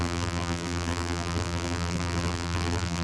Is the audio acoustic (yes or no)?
no